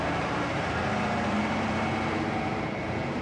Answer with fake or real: fake